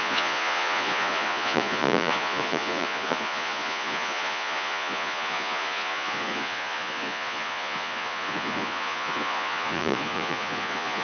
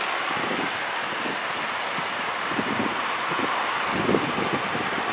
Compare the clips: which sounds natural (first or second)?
second